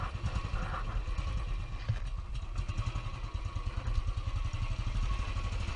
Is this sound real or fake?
real